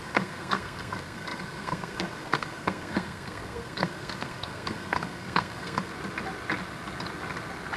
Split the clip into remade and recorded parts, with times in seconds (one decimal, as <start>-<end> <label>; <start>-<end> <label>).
0.0-5.9 remade; 5.9-7.8 recorded